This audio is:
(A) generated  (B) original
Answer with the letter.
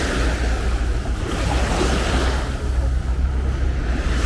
B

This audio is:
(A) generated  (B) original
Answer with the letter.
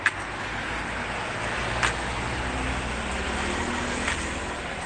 B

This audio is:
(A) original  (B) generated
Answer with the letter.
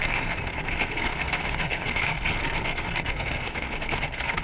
B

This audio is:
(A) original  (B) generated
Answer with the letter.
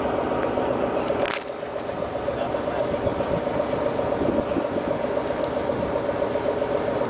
A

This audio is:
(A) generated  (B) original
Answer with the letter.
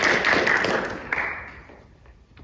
B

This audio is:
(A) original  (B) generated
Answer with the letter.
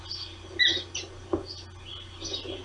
A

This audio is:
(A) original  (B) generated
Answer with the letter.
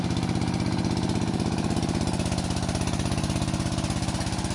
A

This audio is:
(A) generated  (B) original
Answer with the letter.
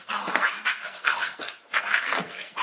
A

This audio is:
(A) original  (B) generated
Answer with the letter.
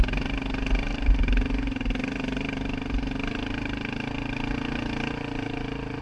A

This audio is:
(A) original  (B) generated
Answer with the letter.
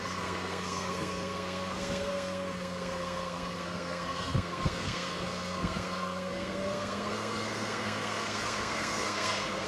B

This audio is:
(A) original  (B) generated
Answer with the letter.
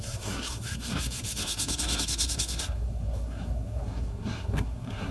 B